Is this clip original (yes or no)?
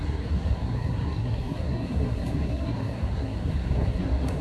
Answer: no